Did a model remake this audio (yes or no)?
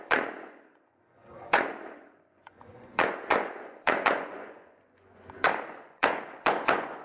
yes